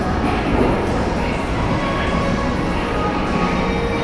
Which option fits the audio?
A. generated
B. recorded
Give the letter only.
B